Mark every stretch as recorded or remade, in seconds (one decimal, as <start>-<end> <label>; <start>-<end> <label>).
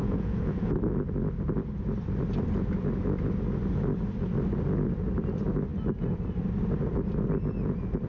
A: 0.0-0.7 remade; 0.7-8.1 recorded